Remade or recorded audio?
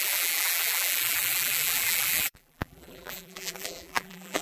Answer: remade